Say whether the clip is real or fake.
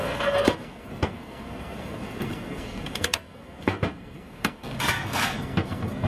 fake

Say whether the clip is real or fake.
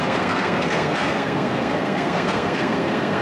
fake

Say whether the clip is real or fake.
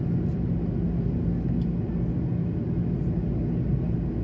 real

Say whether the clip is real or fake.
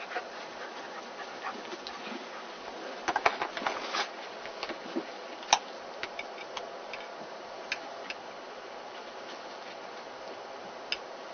real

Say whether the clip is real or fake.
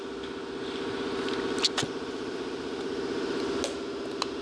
real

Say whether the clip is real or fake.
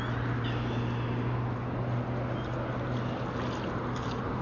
real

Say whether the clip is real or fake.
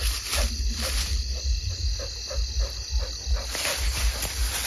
real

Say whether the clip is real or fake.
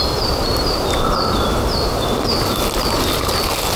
real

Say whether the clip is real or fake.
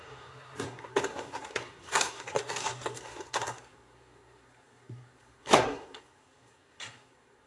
fake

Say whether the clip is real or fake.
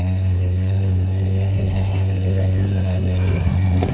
fake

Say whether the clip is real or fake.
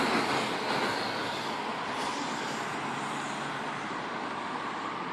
real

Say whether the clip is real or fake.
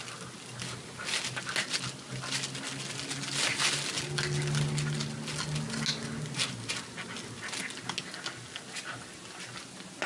real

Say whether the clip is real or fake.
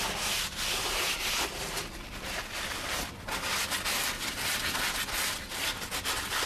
real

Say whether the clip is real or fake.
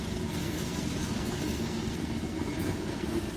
fake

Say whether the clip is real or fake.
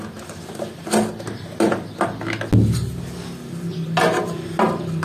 real